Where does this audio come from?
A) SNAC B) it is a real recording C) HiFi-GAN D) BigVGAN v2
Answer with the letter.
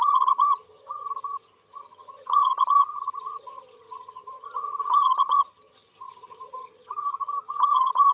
C